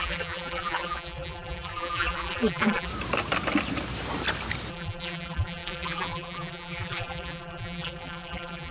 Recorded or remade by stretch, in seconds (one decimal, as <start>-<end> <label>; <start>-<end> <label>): 0.0-2.9 remade; 2.9-4.7 recorded; 4.7-8.7 remade